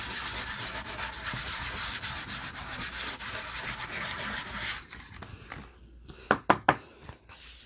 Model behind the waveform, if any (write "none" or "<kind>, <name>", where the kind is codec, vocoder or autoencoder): none